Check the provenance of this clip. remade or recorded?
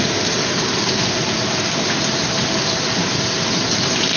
recorded